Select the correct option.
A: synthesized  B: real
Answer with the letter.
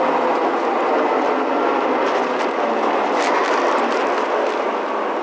B